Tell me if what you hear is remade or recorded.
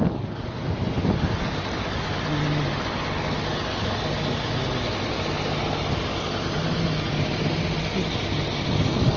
recorded